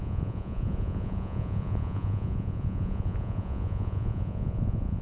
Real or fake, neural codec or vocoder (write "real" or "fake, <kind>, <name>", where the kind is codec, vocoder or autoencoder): fake, vocoder, Vocos